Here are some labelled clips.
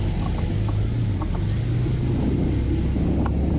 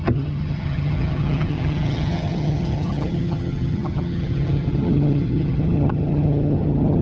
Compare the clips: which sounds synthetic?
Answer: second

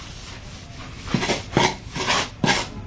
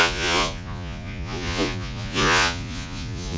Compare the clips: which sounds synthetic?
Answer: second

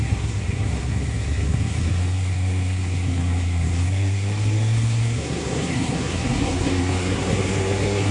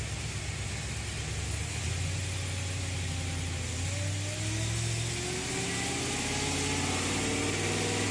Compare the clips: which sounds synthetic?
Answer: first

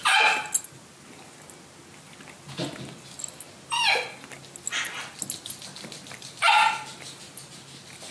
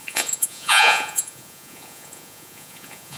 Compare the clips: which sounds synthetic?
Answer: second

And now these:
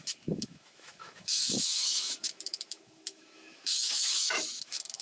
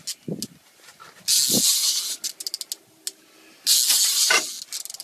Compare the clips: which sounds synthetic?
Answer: first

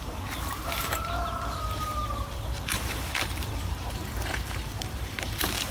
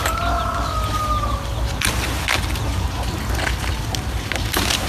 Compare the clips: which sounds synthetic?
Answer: first